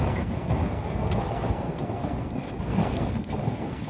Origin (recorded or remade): remade